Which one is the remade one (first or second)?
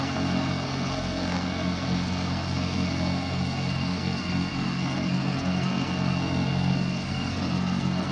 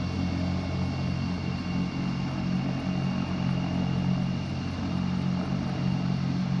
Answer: first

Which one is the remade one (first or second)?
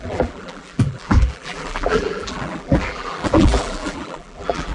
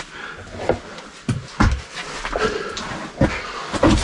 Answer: first